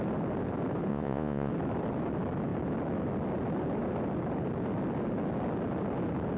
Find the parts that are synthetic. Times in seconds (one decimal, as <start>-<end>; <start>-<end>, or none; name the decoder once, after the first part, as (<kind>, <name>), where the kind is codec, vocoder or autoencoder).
0.9-1.5 (vocoder, Vocos)